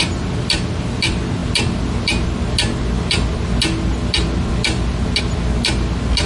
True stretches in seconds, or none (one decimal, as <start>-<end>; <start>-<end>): 0.0-6.3